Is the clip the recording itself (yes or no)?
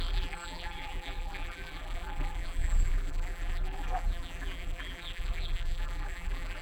no